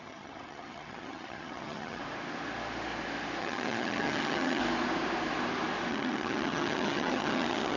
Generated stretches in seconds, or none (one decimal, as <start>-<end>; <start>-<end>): 0.0-2.0; 3.4-4.6; 5.9-7.8